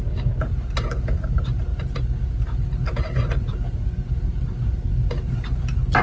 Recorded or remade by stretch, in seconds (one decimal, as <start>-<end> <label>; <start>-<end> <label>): 0.0-6.0 recorded